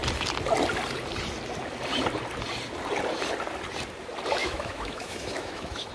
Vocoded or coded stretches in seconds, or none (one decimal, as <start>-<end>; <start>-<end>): 4.4-5.9